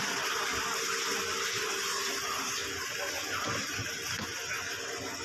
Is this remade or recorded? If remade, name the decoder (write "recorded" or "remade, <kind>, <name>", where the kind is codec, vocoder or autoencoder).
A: recorded